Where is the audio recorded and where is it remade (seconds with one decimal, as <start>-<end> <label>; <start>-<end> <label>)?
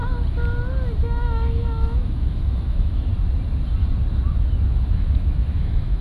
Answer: 0.0-1.0 recorded; 1.0-3.1 remade; 3.1-4.7 recorded; 4.7-6.0 remade